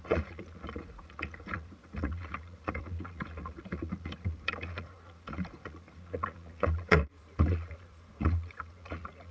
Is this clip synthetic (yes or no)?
yes